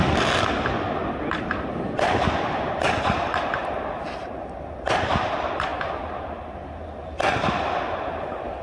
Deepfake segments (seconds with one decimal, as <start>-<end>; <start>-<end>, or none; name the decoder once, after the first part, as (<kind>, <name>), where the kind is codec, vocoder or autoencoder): none